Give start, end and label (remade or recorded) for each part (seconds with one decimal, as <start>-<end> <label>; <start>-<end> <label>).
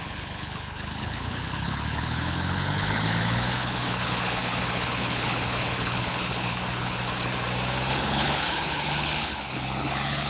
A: 0.0-7.3 remade; 7.3-7.9 recorded; 7.9-10.3 remade